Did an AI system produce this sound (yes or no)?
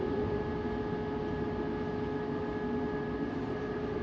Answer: no